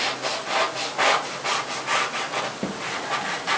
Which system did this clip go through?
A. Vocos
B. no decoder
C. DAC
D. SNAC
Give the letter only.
B